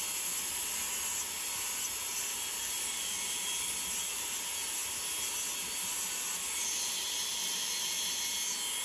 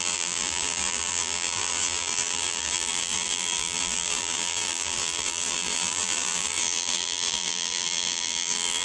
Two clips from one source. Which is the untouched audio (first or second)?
first